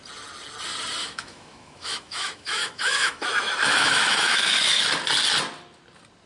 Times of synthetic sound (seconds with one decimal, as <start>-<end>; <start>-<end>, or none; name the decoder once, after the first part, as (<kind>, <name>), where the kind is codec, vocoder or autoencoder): 1.0-4.8 (autoencoder, DAC-VAE)